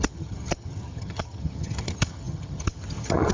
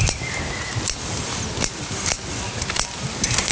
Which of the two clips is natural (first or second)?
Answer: second